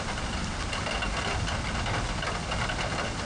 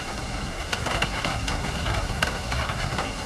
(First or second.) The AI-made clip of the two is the second